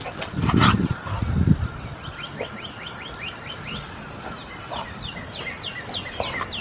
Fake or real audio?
real